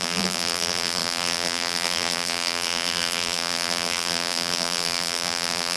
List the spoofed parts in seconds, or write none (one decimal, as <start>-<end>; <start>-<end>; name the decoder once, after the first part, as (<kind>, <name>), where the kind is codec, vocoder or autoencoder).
0.0-5.8 (vocoder, BigVGAN v2)